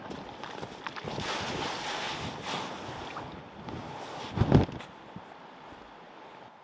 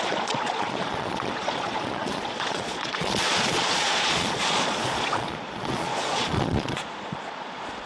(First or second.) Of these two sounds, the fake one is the second